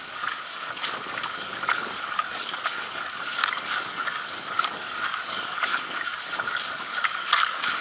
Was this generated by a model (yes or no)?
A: yes